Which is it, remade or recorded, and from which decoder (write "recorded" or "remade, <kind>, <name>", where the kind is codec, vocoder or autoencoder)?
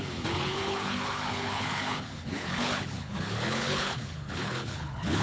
remade, codec, HILCodec